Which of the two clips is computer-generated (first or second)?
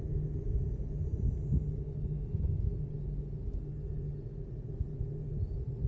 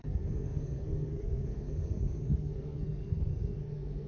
second